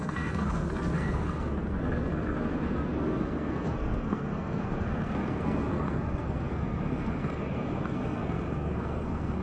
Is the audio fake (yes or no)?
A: yes